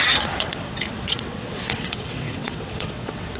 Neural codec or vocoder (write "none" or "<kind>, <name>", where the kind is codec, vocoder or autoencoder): vocoder, WaveNeXt